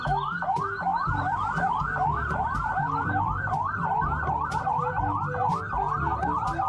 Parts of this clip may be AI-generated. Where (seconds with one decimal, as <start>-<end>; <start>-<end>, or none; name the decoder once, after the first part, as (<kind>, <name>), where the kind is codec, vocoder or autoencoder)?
0.9-4.9 (vocoder, BigVGAN v2)